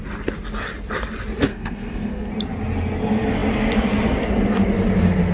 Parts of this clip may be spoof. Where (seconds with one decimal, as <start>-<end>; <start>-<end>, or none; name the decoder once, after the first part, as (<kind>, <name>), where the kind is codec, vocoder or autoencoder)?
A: 1.5-2.3 (codec, SNAC)